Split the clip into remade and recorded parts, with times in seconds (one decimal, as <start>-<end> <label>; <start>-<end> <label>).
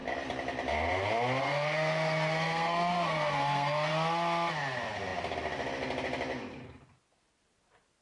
0.0-1.4 recorded; 1.4-3.9 remade; 3.9-8.0 recorded